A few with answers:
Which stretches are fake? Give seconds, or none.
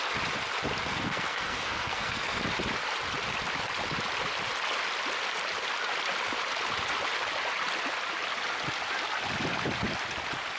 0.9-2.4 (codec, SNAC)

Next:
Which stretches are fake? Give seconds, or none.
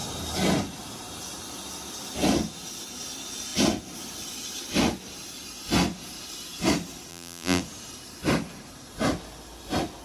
7.1-7.6 (vocoder, BigVGAN v2)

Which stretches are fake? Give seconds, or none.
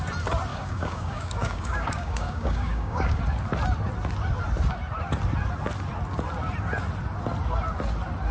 0.5-3.2 (codec, DAC)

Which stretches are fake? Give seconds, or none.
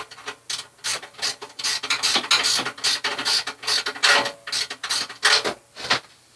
none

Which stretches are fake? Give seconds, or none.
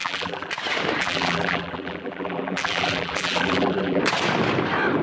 0.0-0.5 (vocoder, BigVGAN v2); 1.0-4.0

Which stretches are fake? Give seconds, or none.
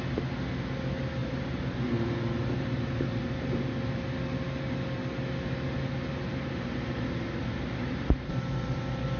none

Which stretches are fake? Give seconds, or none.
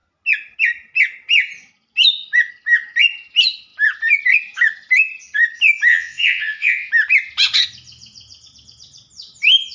5.9-6.9 (vocoder, WaveNeXt)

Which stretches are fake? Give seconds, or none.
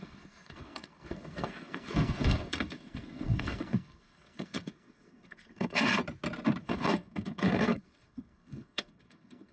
0.0-6.0 (codec, SNAC); 6.6-9.5